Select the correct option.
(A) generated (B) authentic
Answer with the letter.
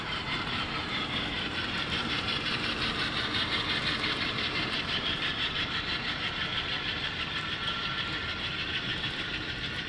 A